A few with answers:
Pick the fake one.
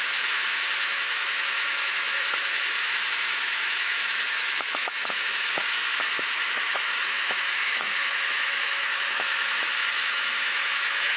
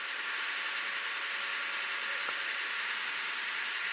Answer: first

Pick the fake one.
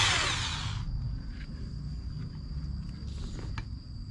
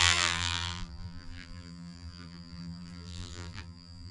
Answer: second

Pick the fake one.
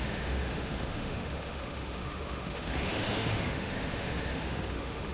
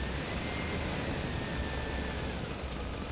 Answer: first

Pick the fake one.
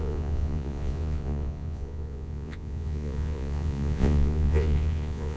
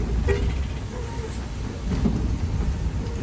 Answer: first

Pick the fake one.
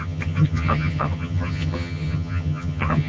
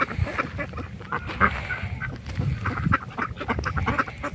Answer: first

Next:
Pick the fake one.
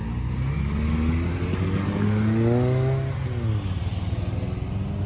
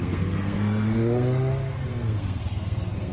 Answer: second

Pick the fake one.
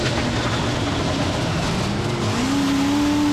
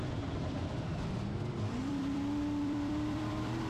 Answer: second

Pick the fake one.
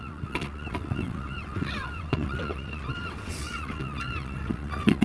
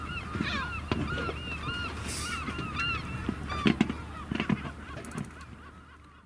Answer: first